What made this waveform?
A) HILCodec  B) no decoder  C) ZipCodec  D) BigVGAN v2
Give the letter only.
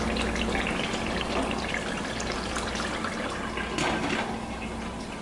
B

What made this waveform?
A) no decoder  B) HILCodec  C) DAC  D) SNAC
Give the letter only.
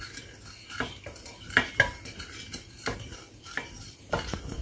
A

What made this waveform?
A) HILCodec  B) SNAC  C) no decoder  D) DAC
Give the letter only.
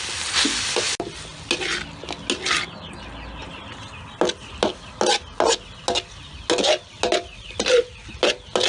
C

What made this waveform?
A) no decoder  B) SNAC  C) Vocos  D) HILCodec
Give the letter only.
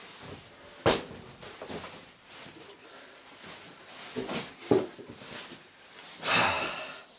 A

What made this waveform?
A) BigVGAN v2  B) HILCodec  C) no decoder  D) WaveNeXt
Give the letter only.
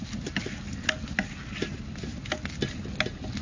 C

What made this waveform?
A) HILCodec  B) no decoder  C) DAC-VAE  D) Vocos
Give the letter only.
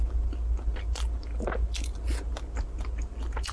B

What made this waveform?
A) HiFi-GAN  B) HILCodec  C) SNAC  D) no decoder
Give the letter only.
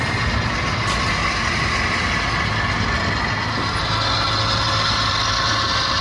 D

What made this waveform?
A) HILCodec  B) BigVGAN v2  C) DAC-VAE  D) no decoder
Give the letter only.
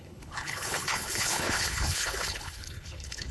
A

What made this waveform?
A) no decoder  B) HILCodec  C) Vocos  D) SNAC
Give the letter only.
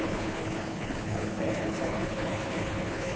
B